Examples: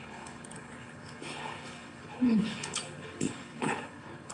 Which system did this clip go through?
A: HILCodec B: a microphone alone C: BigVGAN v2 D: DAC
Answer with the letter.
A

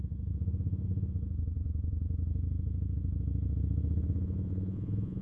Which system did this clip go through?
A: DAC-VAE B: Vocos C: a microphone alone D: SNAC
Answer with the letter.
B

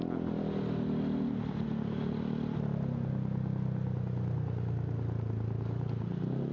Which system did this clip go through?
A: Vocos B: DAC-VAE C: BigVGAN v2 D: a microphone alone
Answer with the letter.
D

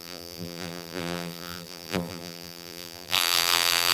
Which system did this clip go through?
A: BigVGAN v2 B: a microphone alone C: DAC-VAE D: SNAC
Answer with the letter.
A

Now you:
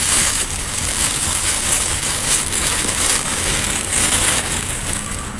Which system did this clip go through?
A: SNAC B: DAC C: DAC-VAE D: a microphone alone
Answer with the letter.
B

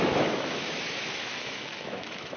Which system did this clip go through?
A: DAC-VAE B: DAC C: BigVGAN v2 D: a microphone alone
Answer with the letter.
A